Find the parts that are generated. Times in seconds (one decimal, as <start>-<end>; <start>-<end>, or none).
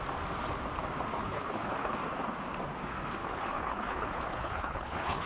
1.2-1.9; 3.2-5.3